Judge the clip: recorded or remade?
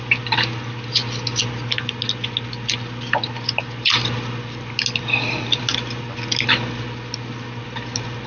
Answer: recorded